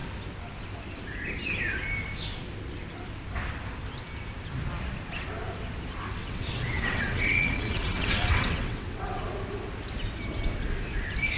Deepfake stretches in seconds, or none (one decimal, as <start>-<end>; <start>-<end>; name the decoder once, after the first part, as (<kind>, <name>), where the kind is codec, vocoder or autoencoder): 6.2-9.2 (vocoder, WaveNeXt)